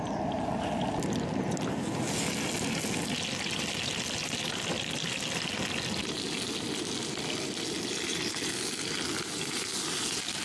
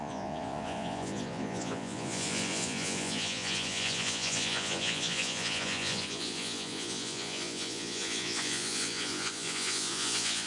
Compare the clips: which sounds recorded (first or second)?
first